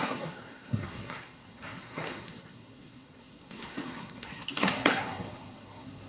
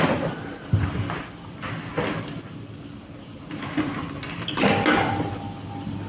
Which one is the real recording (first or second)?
second